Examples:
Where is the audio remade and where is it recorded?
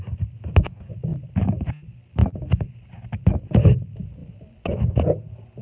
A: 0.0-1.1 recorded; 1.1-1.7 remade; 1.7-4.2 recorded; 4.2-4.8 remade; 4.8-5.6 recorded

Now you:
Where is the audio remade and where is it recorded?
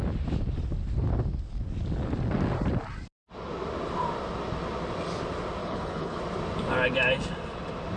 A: 0.0-5.6 recorded; 5.6-6.2 remade; 6.2-8.0 recorded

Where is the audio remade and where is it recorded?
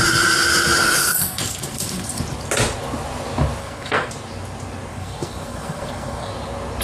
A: 0.0-1.0 recorded; 1.0-2.2 remade; 2.2-3.6 recorded; 3.6-4.1 remade; 4.1-4.9 recorded; 4.9-6.3 remade; 6.3-6.8 recorded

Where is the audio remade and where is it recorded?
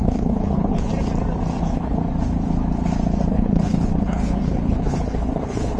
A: 0.0-0.9 remade; 0.9-1.6 recorded; 1.6-2.0 remade; 2.0-3.3 recorded; 3.3-5.8 remade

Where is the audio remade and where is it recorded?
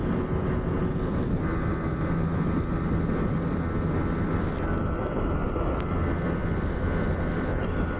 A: 0.0-8.0 recorded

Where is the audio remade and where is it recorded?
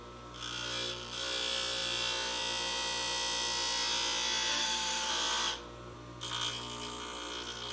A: 0.0-4.5 recorded; 4.5-5.1 remade; 5.1-7.7 recorded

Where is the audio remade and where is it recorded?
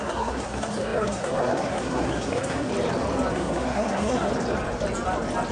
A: 0.0-2.7 remade; 2.7-3.3 recorded; 3.3-4.3 remade; 4.3-5.5 recorded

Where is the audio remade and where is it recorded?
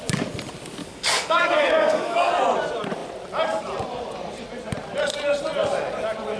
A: 0.0-0.8 recorded; 0.8-2.3 remade; 2.3-6.4 recorded